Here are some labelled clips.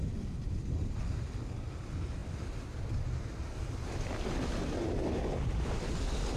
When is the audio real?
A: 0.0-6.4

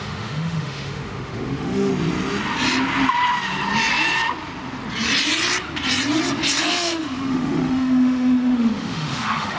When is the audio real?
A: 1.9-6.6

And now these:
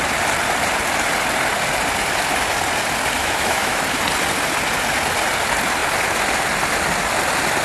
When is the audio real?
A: 0.0-3.2; 3.8-7.6

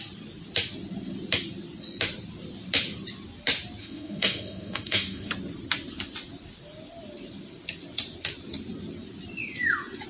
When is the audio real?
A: 0.0-3.8; 5.3-10.1

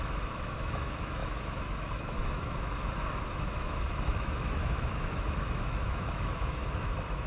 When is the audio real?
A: none

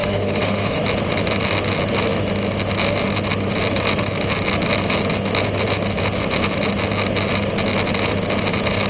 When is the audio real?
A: 0.8-8.9

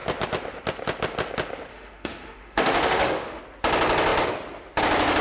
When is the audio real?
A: 0.0-1.7; 3.4-5.2

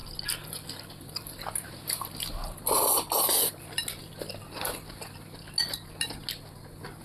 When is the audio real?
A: 0.0-7.0